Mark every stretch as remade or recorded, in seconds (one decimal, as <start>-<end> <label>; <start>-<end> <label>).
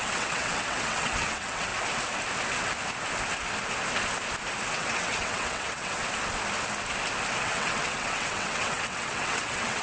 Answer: 0.0-1.7 remade; 1.7-4.7 recorded; 4.7-6.0 remade; 6.0-7.4 recorded; 7.4-9.8 remade